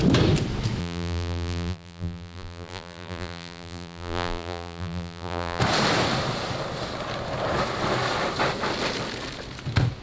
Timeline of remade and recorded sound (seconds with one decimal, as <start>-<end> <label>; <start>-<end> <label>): 0.0-0.8 recorded; 0.8-5.6 remade; 5.6-10.0 recorded